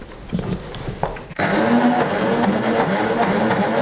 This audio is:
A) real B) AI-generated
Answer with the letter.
A